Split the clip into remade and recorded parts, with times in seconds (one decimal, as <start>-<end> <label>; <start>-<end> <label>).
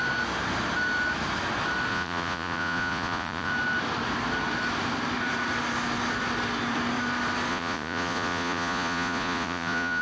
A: 0.0-1.9 recorded; 1.9-3.5 remade; 3.5-7.5 recorded; 7.5-10.0 remade